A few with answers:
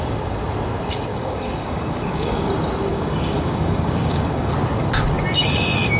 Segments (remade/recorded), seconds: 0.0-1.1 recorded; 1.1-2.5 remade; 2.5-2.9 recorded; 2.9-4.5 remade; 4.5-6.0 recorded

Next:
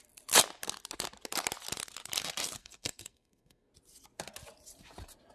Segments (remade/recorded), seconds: 0.0-2.6 recorded; 2.6-3.7 remade; 3.7-5.3 recorded

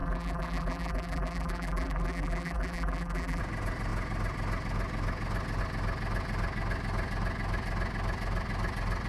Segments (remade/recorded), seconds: 0.0-3.4 remade; 3.4-9.1 recorded

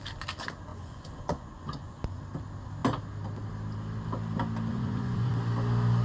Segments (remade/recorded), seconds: 0.0-0.7 recorded; 0.7-2.2 remade; 2.2-4.7 recorded; 4.7-5.3 remade; 5.3-6.0 recorded

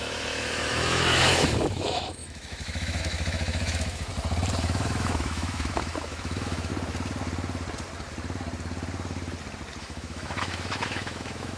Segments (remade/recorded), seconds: 0.0-4.1 remade; 4.1-4.6 recorded; 4.6-6.7 remade; 6.7-9.8 recorded; 9.8-11.6 remade

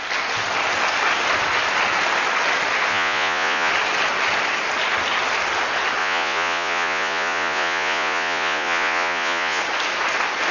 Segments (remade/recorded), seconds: 0.0-2.9 recorded; 2.9-3.7 remade; 3.7-6.0 recorded; 6.0-9.6 remade; 9.6-10.5 recorded

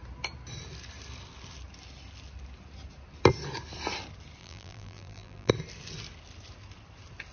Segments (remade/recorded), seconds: 0.0-4.4 recorded; 4.4-5.5 remade; 5.5-7.3 recorded